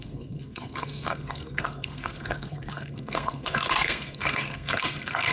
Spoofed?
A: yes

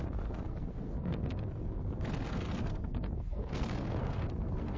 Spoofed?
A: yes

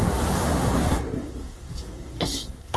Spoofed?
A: yes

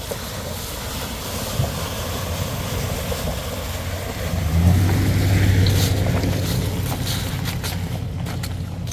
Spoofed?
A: no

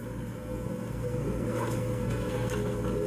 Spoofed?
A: yes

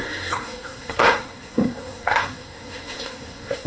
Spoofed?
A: yes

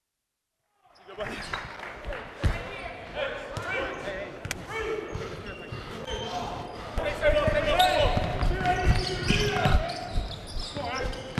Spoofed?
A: no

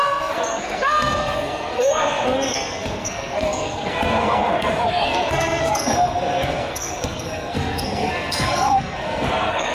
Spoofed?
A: yes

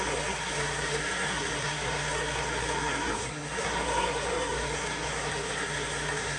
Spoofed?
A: yes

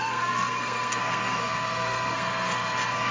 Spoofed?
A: yes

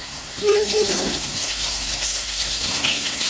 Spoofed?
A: yes